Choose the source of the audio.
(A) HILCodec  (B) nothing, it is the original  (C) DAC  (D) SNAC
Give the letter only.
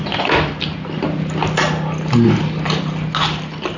B